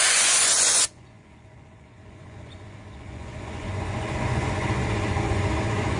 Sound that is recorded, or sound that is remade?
remade